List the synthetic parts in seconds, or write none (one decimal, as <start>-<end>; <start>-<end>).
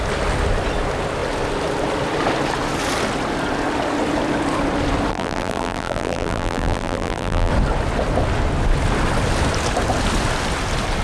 5.1-7.5